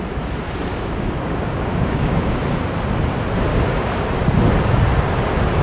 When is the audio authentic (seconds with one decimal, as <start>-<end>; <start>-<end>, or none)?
0.0-0.7; 2.4-3.5; 4.0-5.6

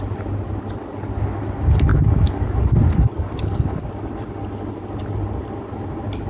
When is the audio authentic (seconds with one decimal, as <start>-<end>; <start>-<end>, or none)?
0.0-1.9; 3.9-6.3

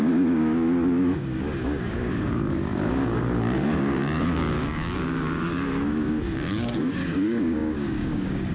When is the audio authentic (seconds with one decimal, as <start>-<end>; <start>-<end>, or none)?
none

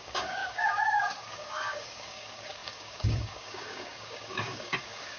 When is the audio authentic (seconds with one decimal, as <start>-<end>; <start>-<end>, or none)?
none

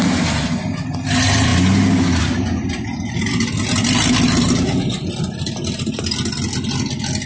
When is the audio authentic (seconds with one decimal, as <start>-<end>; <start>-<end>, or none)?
0.0-7.3

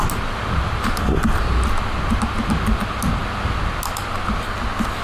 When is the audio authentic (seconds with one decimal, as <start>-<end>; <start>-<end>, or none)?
0.0-5.0